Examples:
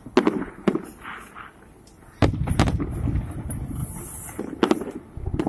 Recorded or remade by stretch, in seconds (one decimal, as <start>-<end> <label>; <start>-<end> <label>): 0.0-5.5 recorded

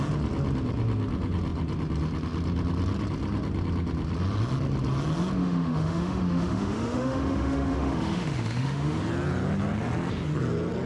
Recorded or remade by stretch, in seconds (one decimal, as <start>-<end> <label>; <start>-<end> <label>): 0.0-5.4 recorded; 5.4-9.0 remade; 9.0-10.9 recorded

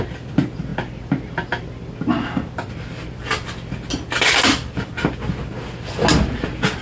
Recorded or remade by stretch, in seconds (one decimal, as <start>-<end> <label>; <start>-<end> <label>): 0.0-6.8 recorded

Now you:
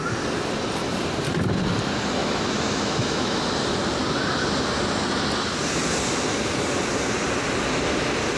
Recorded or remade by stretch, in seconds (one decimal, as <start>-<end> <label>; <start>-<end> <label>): 0.0-2.2 recorded; 2.2-3.4 remade; 3.4-8.4 recorded

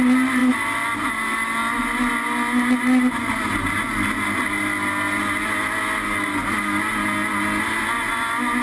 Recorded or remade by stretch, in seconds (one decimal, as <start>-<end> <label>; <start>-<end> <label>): 0.0-8.6 recorded

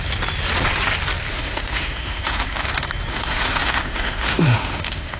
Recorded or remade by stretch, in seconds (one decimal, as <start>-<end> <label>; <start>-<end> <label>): 0.0-1.3 recorded; 1.3-2.7 remade; 2.7-3.1 recorded; 3.1-5.2 remade